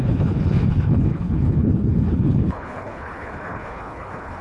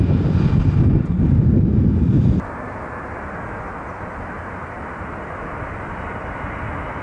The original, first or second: second